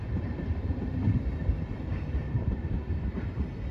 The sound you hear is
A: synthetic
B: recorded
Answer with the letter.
A